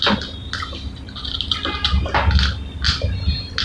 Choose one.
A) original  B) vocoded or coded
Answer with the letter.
A